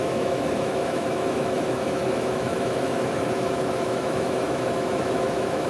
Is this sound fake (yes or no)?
yes